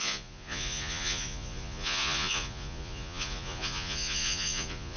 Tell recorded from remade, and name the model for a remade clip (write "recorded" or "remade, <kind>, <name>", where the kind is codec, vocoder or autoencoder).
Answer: remade, vocoder, Vocos